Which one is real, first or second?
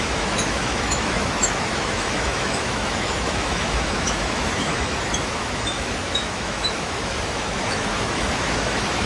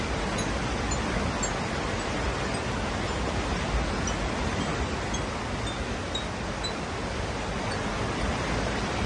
second